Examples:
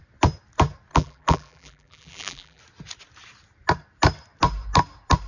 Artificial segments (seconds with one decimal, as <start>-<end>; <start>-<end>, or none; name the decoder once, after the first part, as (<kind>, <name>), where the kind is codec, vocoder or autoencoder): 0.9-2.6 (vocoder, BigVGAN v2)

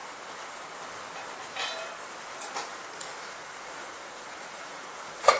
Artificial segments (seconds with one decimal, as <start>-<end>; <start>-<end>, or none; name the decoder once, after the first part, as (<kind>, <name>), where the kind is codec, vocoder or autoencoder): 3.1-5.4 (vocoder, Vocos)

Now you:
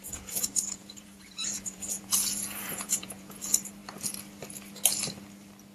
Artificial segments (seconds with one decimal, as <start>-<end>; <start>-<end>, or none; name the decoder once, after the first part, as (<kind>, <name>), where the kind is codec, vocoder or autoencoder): 0.0-3.4 (vocoder, Vocos)

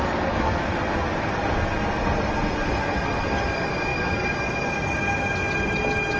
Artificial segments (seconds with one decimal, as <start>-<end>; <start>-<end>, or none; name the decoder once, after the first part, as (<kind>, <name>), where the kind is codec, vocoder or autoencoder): none

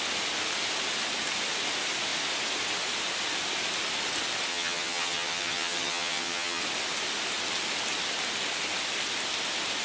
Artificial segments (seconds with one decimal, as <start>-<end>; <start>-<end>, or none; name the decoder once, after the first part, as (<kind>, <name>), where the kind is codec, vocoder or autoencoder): 4.5-6.6 (vocoder, HiFi-GAN)